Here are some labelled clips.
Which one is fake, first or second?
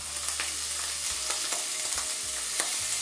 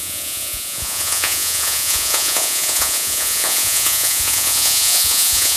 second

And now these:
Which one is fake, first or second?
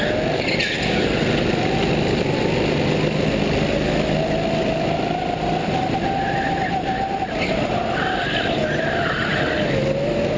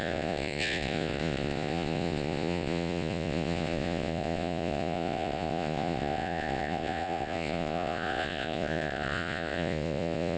second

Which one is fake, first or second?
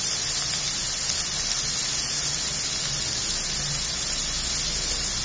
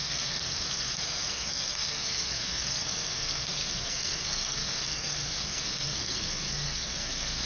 second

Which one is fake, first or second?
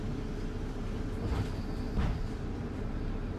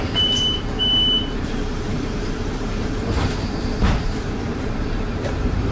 second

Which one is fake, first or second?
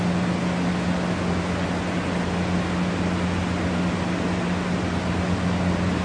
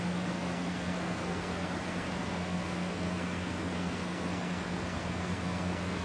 second